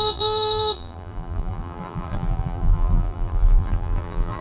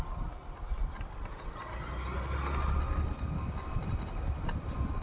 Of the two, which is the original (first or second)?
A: second